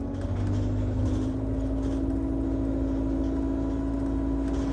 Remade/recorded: recorded